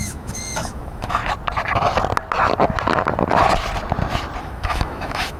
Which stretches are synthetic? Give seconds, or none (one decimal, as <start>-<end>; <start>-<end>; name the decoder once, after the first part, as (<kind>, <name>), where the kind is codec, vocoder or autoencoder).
0.0-1.2 (autoencoder, DAC-VAE); 4.4-5.4